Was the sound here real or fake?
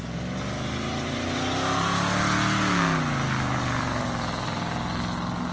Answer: real